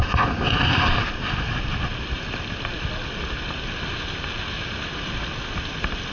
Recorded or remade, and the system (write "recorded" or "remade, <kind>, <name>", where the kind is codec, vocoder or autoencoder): recorded